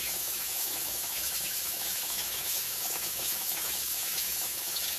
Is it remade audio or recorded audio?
remade